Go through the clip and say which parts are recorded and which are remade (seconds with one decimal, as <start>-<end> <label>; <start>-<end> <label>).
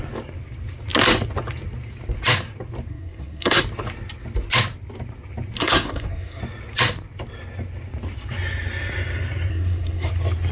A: 0.0-2.9 recorded; 2.9-3.6 remade; 3.6-5.6 recorded; 5.6-6.4 remade; 6.4-9.5 recorded; 9.5-10.1 remade; 10.1-10.5 recorded